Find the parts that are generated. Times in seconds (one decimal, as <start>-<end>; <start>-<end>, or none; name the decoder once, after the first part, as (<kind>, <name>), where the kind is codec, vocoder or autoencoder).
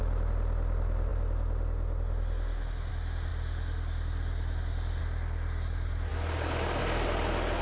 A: none